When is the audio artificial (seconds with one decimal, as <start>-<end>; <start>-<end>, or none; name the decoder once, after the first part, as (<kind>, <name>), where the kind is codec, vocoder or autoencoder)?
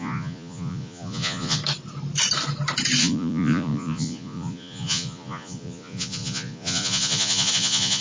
0.0-1.6 (vocoder, Vocos); 3.0-8.0